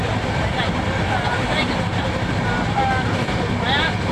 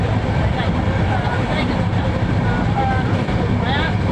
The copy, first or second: second